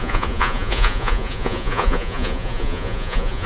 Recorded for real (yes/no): no